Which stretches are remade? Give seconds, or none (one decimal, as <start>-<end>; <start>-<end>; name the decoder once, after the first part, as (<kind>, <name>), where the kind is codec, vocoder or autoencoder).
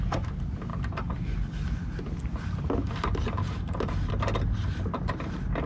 none